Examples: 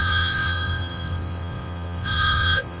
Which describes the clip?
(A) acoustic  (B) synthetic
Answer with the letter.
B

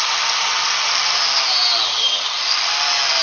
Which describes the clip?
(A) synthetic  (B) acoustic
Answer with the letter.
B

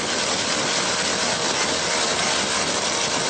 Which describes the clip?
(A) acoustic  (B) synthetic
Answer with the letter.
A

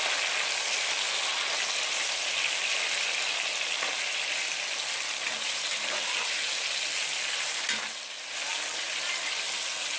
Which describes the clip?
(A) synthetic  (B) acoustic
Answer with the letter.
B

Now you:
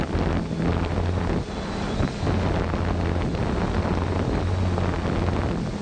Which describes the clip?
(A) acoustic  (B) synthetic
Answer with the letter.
A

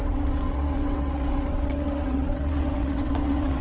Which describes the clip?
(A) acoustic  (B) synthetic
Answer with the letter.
B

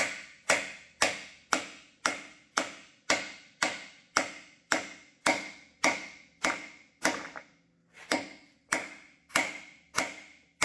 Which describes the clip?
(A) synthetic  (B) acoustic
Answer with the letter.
B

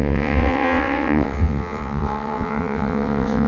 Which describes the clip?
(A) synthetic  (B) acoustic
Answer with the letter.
A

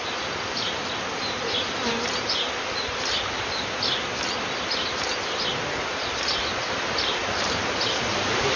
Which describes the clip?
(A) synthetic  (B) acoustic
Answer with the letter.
B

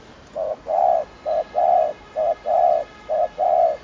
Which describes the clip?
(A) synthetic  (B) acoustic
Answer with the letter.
B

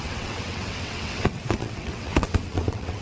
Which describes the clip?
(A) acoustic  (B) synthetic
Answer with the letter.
B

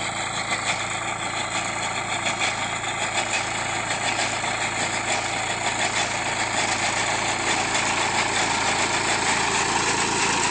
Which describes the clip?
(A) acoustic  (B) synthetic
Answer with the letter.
A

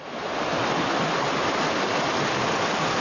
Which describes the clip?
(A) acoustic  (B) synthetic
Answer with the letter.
A